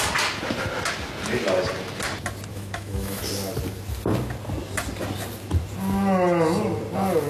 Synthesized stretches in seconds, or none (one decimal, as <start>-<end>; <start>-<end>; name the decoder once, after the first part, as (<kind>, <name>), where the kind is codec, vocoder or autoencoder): 2.5-3.2 (autoencoder, DAC-VAE)